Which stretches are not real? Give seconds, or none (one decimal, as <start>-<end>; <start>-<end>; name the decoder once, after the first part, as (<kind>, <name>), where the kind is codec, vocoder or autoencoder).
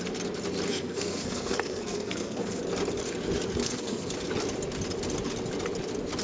0.7-2.6 (codec, SNAC); 3.6-4.1